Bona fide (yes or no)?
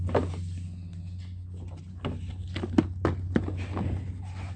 yes